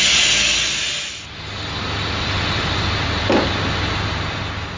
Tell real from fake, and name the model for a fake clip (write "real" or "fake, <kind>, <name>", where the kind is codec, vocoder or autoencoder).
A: real